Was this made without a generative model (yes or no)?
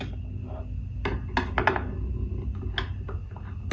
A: yes